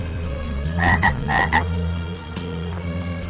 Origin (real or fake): fake